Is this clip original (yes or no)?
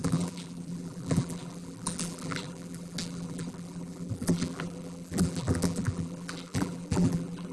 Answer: no